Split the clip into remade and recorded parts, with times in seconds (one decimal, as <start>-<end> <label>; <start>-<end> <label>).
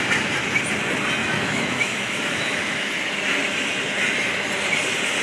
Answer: 0.0-1.2 recorded; 1.2-2.9 remade; 2.9-5.2 recorded